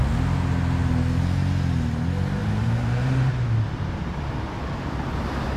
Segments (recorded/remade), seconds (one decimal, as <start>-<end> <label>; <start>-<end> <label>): 0.0-2.4 recorded; 2.4-3.3 remade; 3.3-5.6 recorded